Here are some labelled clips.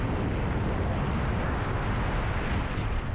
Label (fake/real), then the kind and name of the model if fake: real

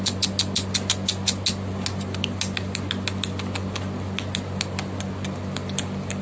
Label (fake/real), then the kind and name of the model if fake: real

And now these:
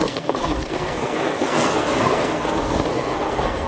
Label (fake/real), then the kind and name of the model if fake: fake, codec, SNAC